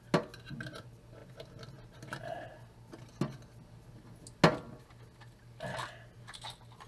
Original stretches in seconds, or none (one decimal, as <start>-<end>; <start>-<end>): 0.0-6.9